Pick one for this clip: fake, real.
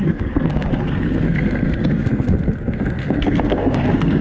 fake